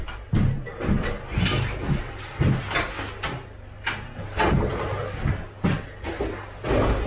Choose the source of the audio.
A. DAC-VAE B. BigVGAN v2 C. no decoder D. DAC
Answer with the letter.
C